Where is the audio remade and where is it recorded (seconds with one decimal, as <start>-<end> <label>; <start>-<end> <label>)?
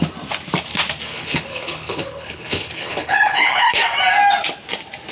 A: 0.0-1.1 recorded; 1.1-3.7 remade; 3.7-5.1 recorded